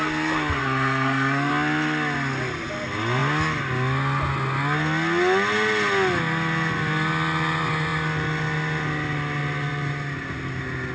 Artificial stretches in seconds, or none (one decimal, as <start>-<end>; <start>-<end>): 0.6-1.5